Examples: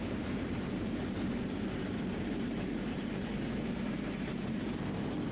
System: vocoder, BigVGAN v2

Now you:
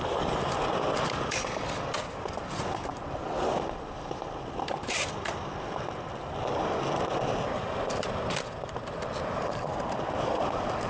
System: vocoder, BigVGAN v2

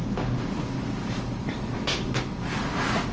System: vocoder, BigVGAN v2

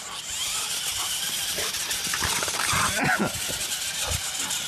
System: none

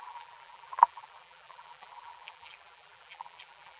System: vocoder, BigVGAN v2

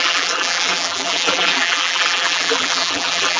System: vocoder, BigVGAN v2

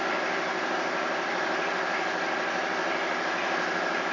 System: vocoder, BigVGAN v2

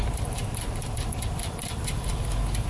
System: vocoder, BigVGAN v2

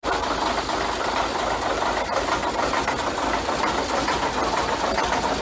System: none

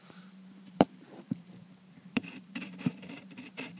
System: vocoder, BigVGAN v2